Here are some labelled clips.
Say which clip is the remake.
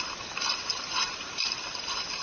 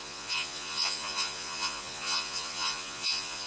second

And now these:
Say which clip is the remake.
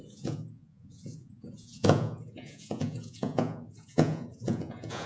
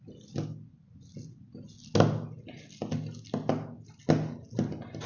first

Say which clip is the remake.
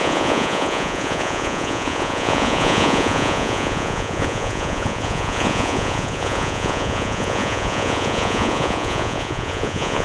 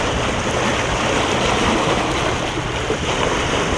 first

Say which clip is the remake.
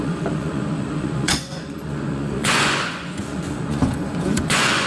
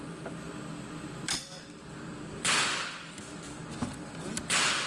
first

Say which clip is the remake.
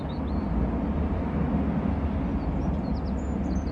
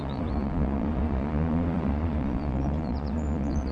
second